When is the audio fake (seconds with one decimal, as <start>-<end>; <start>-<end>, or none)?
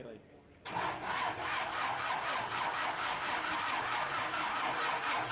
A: none